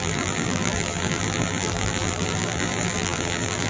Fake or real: fake